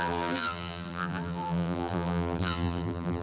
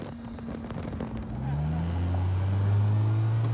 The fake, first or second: first